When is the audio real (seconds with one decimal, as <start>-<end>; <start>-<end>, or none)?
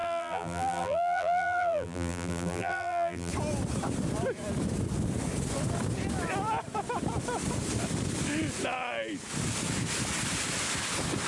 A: 3.3-11.3